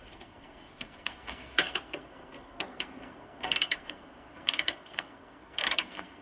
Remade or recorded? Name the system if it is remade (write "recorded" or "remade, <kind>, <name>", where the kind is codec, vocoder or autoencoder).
remade, codec, SNAC